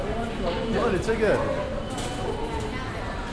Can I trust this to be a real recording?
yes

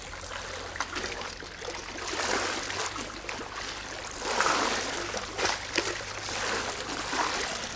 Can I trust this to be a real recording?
yes